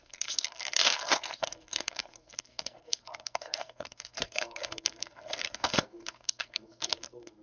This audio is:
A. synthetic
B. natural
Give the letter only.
A